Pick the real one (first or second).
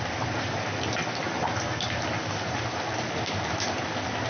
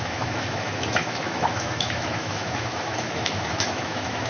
first